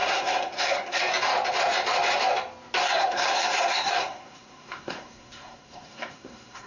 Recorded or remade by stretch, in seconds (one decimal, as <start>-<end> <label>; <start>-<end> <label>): 0.0-1.0 remade; 1.0-2.8 recorded; 2.8-6.7 remade